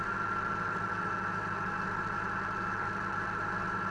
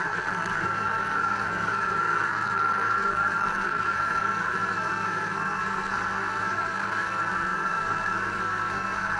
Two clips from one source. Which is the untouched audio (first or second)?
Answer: first